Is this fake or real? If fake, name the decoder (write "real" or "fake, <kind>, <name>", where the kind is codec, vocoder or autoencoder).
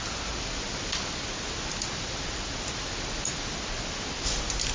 real